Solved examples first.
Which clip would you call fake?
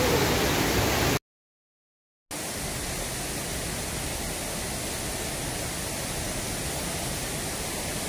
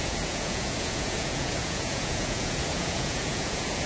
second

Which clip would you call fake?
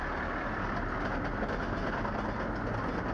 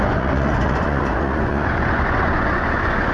second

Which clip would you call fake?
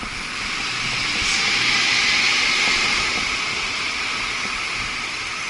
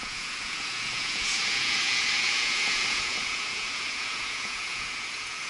second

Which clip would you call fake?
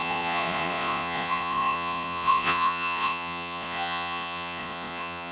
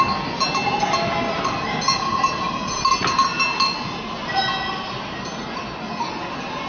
first